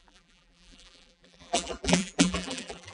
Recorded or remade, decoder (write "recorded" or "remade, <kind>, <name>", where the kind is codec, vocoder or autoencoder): remade, vocoder, BigVGAN v2